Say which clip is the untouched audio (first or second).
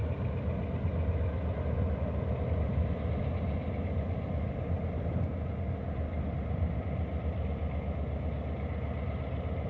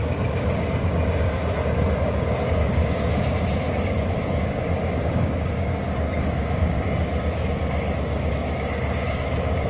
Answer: first